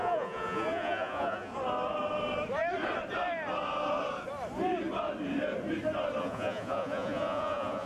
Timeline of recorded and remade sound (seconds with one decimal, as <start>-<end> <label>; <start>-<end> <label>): 0.0-1.5 remade; 1.5-6.2 recorded; 6.2-7.9 remade